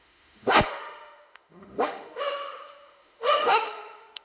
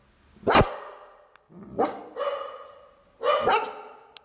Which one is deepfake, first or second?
first